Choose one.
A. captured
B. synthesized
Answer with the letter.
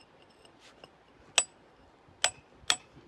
A